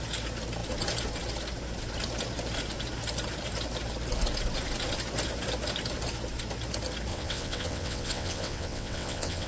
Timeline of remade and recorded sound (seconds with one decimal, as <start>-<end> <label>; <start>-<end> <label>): 0.0-7.1 recorded; 7.1-9.5 remade